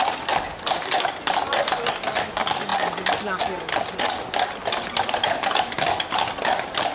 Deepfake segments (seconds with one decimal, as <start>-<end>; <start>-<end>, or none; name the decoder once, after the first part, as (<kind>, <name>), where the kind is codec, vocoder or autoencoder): none